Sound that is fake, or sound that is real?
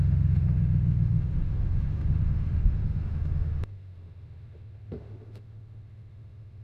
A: fake